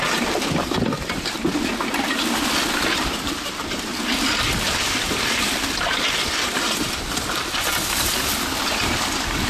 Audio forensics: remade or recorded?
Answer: recorded